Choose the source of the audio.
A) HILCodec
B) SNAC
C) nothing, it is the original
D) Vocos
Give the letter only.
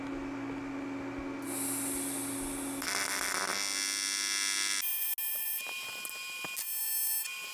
C